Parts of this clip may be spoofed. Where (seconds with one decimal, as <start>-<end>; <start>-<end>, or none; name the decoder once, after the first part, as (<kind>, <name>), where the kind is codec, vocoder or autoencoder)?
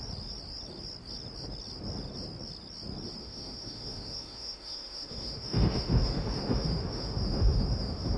3.2-8.2 (autoencoder, DAC-VAE)